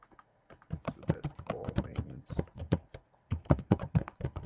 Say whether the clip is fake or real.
fake